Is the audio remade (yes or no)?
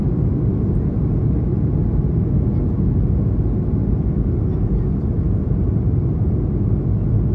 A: no